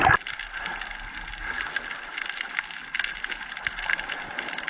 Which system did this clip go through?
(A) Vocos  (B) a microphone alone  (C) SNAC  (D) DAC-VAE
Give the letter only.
B